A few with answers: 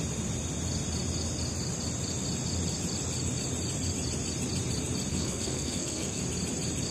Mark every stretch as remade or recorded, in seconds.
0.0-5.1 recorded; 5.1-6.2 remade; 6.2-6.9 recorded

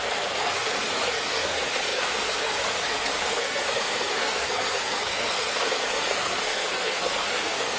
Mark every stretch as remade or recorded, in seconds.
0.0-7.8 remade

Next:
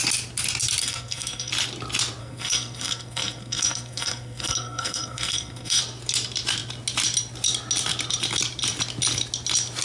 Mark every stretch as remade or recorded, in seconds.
0.0-0.8 recorded; 0.8-1.5 remade; 1.5-2.2 recorded; 2.2-5.8 remade; 5.8-9.8 recorded

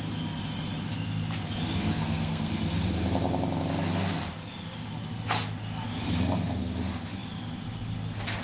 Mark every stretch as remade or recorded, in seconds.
0.0-2.0 recorded; 2.0-2.5 remade; 2.5-8.4 recorded